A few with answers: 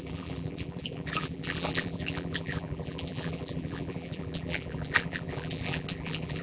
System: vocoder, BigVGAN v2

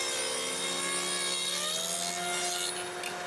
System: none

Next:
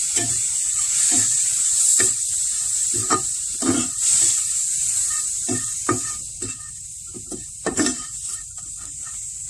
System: vocoder, BigVGAN v2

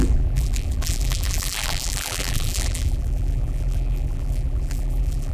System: vocoder, BigVGAN v2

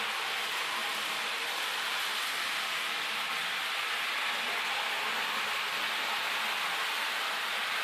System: none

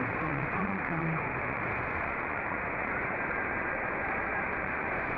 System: vocoder, Vocos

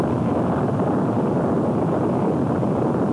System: none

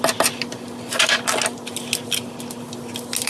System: none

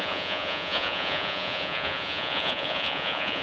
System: vocoder, Vocos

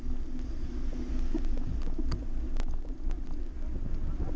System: none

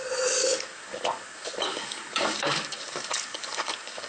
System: codec, DAC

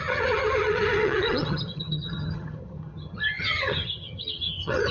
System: vocoder, HiFi-GAN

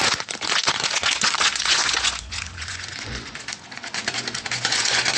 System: vocoder, Vocos